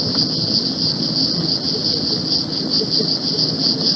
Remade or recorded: recorded